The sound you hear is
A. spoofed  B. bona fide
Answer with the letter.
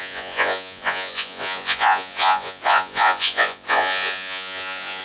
A